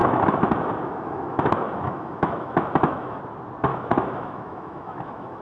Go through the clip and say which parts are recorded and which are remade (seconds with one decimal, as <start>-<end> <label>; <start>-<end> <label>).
0.0-3.2 remade; 3.2-3.7 recorded; 3.7-5.4 remade